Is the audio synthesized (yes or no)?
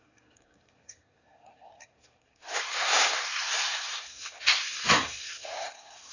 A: yes